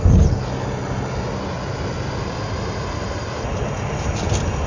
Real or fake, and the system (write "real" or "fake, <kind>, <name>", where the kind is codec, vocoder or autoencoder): real